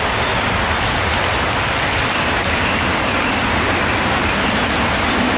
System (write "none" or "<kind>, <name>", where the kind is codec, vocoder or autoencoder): none